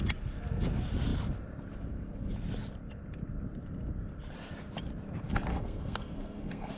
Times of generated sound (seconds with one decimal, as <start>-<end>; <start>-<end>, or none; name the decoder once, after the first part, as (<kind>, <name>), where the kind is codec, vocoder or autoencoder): 5.5-6.8 (codec, SNAC)